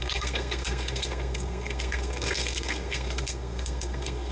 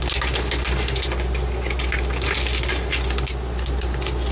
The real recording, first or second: second